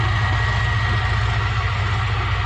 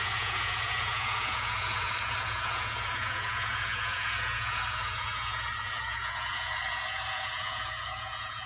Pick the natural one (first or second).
first